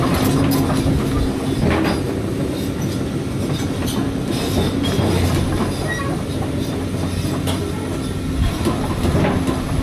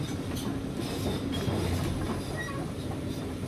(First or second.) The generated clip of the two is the second